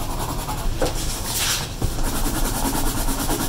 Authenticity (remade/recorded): recorded